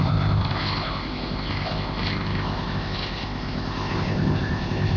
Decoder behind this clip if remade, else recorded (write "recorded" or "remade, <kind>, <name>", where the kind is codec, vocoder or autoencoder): remade, codec, ZipCodec